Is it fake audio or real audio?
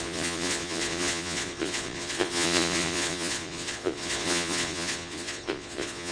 fake